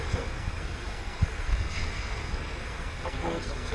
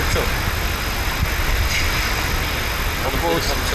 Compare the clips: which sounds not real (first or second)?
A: first